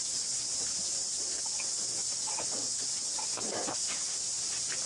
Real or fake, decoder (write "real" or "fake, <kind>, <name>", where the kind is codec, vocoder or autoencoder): real